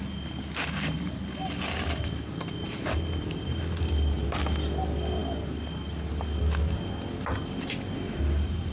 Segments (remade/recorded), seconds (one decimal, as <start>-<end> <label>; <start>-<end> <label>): 0.0-8.7 recorded